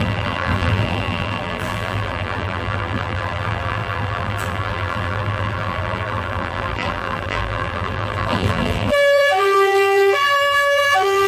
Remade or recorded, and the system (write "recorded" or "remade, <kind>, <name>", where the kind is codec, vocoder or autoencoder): remade, vocoder, BigVGAN v2